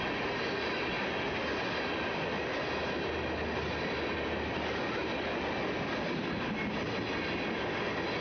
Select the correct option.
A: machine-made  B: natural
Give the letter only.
B